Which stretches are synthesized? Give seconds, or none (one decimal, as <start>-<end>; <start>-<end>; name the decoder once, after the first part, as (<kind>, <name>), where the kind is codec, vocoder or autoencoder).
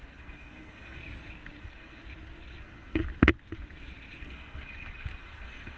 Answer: 0.0-1.0 (codec, SNAC); 1.6-2.0; 2.6-3.0; 4.2-5.8